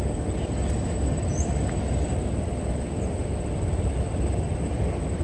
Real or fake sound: real